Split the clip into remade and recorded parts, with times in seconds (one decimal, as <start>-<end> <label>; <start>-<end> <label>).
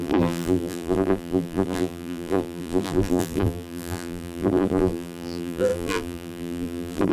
0.0-7.1 remade